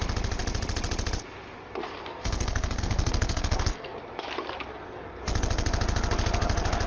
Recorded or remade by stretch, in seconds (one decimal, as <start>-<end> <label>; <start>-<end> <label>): 0.0-2.1 recorded; 2.1-4.0 remade; 4.0-4.7 recorded; 4.7-5.2 remade; 5.2-6.9 recorded

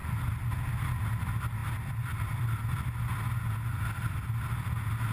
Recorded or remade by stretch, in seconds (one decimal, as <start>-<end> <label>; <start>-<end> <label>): 0.0-5.1 recorded

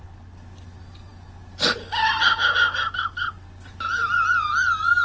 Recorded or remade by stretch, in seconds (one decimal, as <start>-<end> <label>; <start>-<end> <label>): 0.0-5.0 recorded

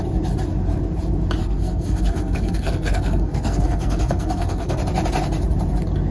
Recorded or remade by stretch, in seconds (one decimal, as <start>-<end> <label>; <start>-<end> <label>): 0.0-1.4 recorded; 1.4-4.8 remade; 4.8-6.1 recorded

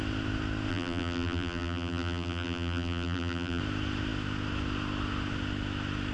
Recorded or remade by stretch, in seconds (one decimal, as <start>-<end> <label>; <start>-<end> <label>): 0.0-0.7 recorded; 0.7-3.6 remade; 3.6-6.1 recorded